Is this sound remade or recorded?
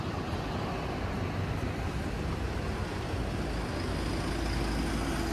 recorded